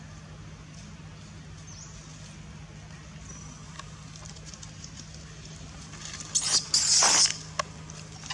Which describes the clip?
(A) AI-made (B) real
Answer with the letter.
B